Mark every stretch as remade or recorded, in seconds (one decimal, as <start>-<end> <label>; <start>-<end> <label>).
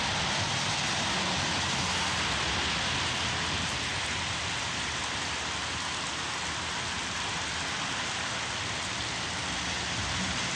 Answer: 0.0-10.6 recorded